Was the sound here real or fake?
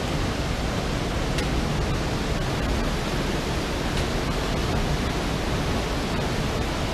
real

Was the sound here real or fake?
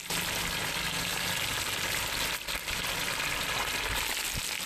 real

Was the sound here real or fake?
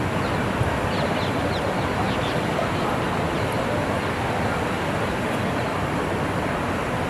real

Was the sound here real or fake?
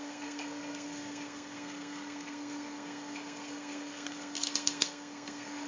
fake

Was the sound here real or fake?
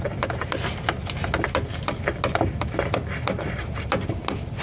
real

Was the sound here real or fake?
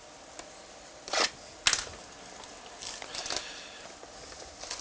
real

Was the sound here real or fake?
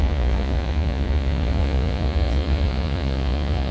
fake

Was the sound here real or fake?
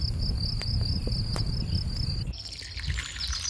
real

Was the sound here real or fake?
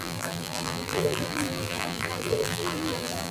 fake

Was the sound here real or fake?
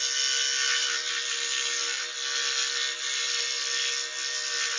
real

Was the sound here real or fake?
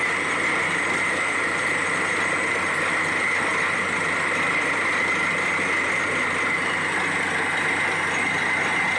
real